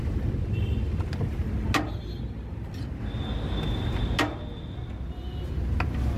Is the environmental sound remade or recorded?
recorded